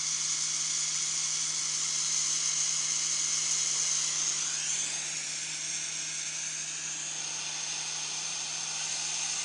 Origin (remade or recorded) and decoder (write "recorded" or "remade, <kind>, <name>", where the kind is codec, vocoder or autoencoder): recorded